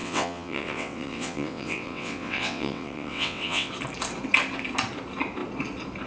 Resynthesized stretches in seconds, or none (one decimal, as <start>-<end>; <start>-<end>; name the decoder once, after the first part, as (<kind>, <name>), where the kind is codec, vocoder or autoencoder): 0.0-3.7 (vocoder, WaveNeXt)